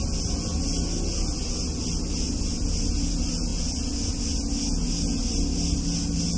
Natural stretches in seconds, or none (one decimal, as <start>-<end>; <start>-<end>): 0.0-6.4